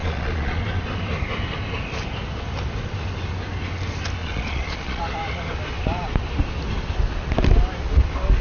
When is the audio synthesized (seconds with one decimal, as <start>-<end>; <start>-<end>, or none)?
0.0-0.6; 4.2-5.0